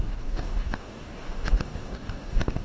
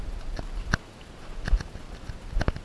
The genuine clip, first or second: second